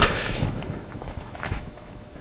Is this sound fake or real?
fake